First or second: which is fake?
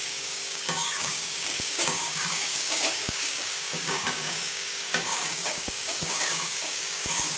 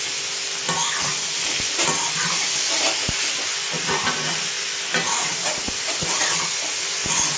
first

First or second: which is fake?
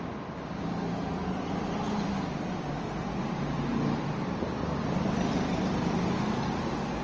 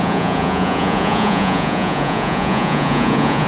second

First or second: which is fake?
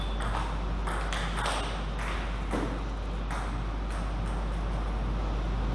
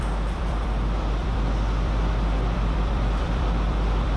second